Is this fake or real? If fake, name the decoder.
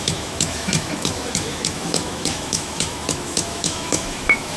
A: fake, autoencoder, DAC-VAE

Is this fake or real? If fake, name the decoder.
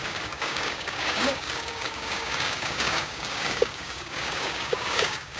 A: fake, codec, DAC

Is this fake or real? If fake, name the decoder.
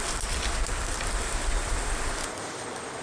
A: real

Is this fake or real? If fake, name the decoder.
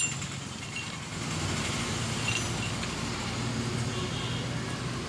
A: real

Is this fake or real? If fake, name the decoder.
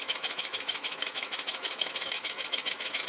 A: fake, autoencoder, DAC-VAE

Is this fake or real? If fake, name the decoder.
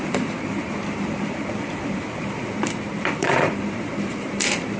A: fake, vocoder, BigVGAN v2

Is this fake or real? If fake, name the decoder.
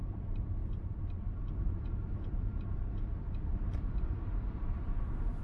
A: fake, vocoder, BigVGAN v2